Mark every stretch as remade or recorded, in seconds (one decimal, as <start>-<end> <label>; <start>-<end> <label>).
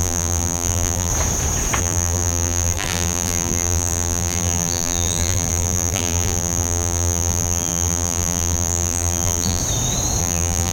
0.0-1.1 remade; 1.1-1.8 recorded; 1.8-9.6 remade; 9.6-10.2 recorded; 10.2-10.7 remade